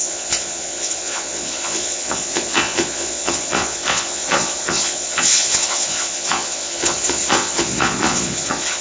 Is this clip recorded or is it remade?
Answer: remade